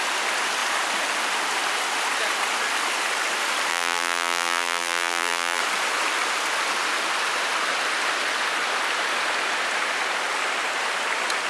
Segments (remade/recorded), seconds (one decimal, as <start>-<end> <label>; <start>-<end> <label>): 0.0-3.7 recorded; 3.7-5.6 remade; 5.6-11.5 recorded